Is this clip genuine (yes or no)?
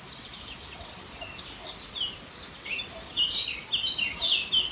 yes